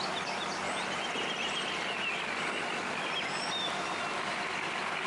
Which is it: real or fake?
real